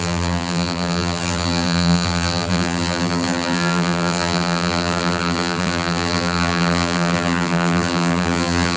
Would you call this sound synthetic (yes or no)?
yes